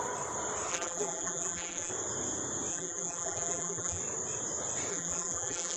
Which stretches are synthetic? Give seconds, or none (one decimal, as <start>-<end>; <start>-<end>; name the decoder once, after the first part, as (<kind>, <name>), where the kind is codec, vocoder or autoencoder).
0.7-1.9 (vocoder, BigVGAN v2); 2.7-4.0; 4.9-5.8